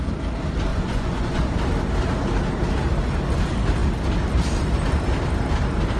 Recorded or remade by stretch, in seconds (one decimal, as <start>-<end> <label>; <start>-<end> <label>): 0.0-0.7 recorded; 0.7-1.5 remade; 1.5-6.0 recorded